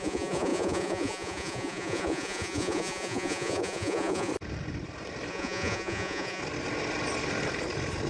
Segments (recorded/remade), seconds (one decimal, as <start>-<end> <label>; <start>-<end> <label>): 0.0-4.3 remade; 4.3-5.3 recorded; 5.3-6.4 remade; 6.4-8.1 recorded